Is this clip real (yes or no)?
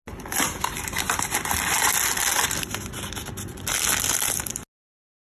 yes